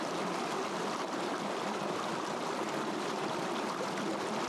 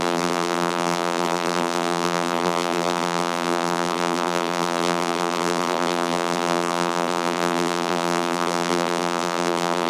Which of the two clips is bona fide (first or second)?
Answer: first